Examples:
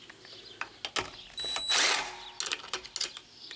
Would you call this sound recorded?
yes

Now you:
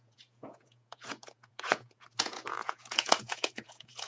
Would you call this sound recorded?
no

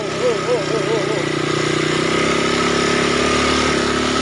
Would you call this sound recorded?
yes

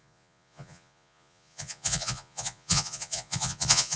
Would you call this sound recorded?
no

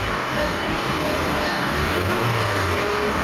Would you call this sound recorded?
no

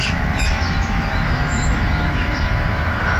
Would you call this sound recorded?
no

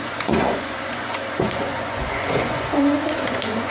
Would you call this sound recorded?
no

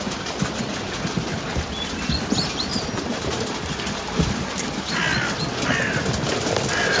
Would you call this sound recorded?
yes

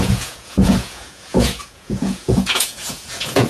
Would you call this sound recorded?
no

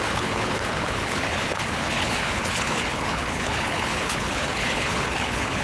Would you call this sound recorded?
no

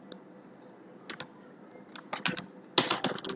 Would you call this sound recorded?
yes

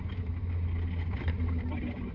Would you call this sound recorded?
yes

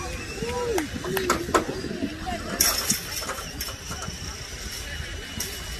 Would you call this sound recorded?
yes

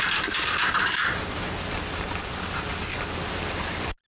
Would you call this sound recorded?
yes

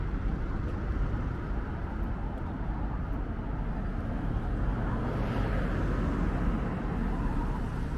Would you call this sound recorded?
yes